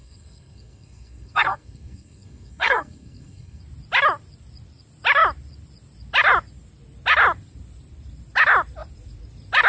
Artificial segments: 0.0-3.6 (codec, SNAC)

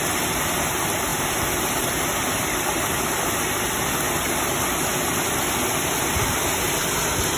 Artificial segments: none

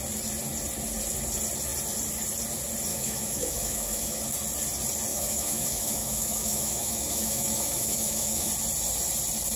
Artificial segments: 2.9-4.2 (autoencoder, DAC-VAE); 5.1-8.5

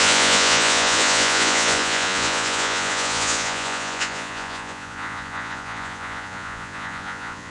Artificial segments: 0.0-7.5 (vocoder, Vocos)

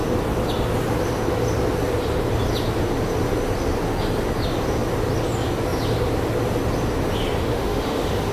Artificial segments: 7.5-8.3 (autoencoder, DAC-VAE)